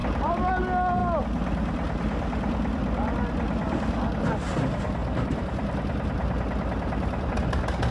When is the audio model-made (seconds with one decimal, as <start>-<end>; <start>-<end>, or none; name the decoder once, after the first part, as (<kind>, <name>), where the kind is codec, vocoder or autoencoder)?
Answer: none